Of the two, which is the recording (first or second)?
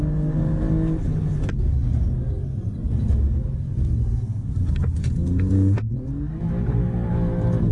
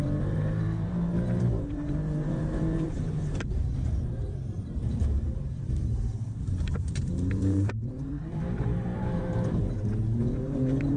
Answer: first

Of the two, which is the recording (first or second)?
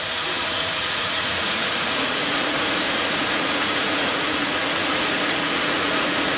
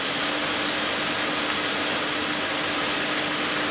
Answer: second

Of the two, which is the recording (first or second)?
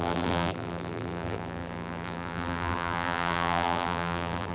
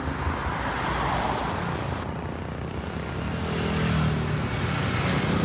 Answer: second